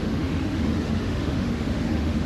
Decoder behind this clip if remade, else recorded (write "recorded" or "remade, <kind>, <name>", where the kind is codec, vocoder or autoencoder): remade, autoencoder, DAC-VAE